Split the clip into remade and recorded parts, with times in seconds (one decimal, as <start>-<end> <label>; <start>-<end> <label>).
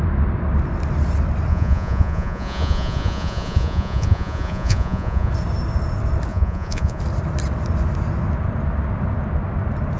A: 0.0-1.5 recorded; 1.5-5.3 remade; 5.3-6.3 recorded; 6.3-7.0 remade; 7.0-10.0 recorded